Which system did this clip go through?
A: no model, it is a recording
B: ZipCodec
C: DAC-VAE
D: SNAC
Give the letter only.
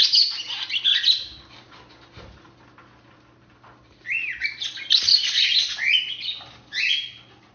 A